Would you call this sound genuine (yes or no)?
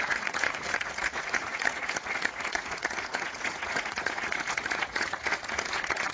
no